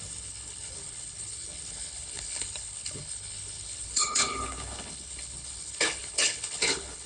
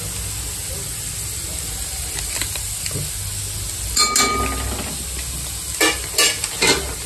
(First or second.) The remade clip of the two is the first